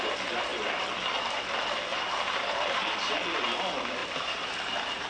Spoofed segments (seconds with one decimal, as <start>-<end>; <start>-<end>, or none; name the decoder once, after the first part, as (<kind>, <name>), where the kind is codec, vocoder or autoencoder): 1.9-2.8 (vocoder, BigVGAN v2); 4.0-5.1